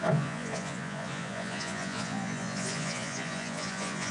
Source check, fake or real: fake